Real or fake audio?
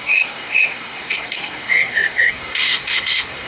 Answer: fake